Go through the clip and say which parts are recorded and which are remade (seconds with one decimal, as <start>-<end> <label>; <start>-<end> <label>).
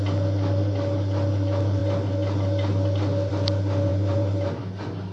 0.0-3.9 recorded; 3.9-4.6 remade; 4.6-5.1 recorded